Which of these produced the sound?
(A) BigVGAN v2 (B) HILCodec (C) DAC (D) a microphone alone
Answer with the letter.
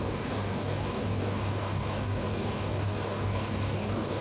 C